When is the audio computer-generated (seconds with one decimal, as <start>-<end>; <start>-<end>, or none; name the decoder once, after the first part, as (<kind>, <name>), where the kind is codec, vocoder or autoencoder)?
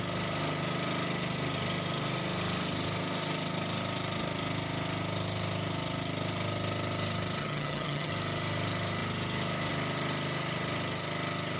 7.4-8.1 (vocoder, HiFi-GAN)